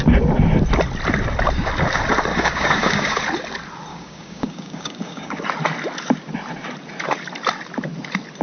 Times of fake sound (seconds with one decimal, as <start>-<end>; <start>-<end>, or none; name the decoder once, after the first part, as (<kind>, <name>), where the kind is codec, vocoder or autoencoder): 2.3-3.2 (codec, DAC); 3.9-5.4